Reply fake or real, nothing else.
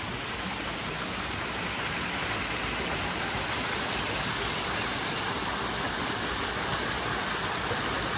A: real